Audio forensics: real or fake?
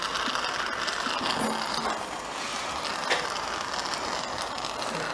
real